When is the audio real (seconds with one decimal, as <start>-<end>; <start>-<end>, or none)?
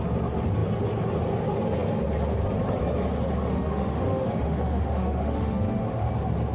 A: 0.0-3.5; 6.1-6.5